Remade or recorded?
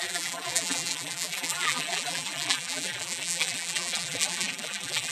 remade